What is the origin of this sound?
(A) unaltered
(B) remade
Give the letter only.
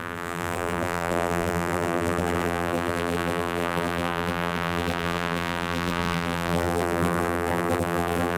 B